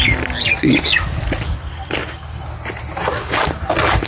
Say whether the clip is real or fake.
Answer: real